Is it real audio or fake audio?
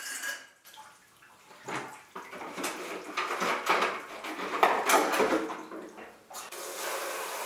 real